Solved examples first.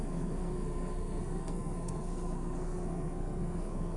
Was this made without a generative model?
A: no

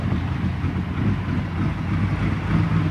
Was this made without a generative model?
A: yes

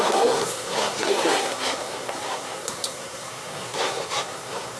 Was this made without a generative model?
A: no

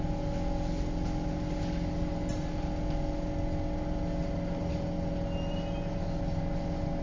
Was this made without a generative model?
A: yes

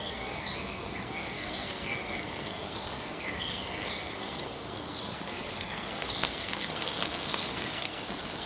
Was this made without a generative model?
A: no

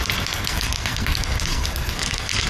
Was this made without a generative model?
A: no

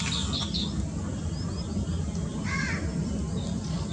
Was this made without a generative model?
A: yes